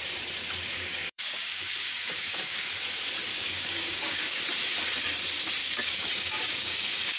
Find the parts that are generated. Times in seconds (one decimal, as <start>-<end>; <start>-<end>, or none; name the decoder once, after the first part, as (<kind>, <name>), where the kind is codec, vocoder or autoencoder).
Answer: 0.7-2.8 (codec, DAC); 3.3-4.4; 5.6-7.2